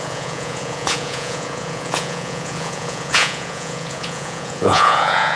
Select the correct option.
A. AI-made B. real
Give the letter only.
A